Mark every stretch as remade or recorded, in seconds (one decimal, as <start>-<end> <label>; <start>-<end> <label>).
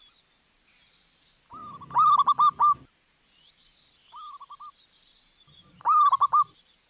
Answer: 0.0-6.9 recorded